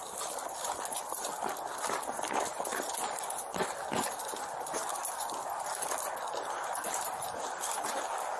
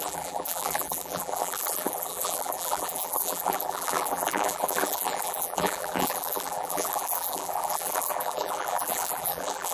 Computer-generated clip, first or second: second